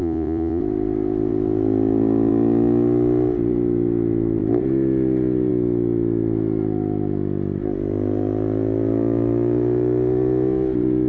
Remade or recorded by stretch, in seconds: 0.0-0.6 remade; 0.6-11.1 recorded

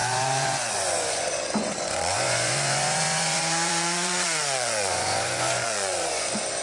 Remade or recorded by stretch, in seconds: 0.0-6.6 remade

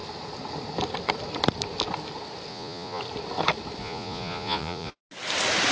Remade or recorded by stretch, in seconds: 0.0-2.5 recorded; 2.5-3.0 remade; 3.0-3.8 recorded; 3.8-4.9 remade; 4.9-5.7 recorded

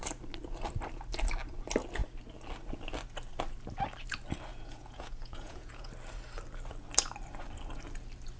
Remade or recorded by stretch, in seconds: 0.0-4.5 recorded; 4.5-5.9 remade; 5.9-8.4 recorded

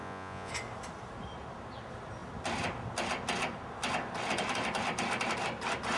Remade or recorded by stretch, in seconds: 0.0-0.5 remade; 0.5-6.0 recorded

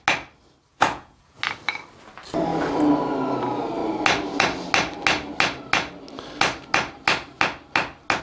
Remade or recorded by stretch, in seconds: 0.0-0.7 recorded; 0.7-1.4 remade; 1.4-8.2 recorded